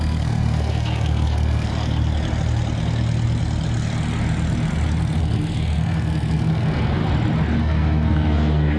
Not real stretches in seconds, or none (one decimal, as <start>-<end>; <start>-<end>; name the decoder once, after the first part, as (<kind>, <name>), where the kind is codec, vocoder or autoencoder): 0.0-1.7 (codec, SNAC); 5.2-7.0; 7.6-8.8